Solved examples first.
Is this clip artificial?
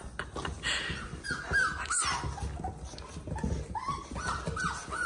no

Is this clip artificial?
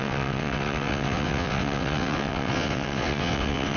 yes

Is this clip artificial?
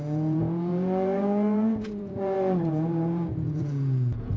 yes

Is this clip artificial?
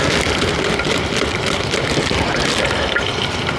no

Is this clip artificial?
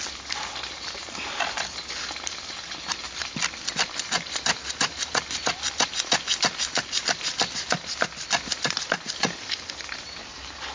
no